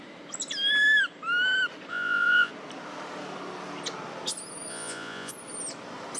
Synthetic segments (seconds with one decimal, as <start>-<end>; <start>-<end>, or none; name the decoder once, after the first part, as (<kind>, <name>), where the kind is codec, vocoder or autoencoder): 1.9-2.5 (vocoder, Vocos); 4.7-5.3